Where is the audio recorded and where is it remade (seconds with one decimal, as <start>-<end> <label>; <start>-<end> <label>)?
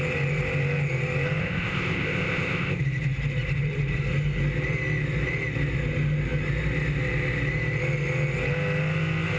0.0-1.4 recorded; 1.4-2.8 remade; 2.8-9.4 recorded